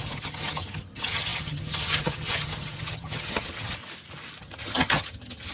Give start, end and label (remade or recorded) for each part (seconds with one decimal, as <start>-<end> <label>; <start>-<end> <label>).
0.0-3.8 remade; 3.8-4.4 recorded; 4.4-5.5 remade